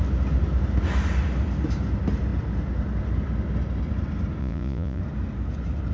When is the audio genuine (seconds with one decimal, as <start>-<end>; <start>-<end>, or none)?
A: 0.0-4.4; 5.0-5.9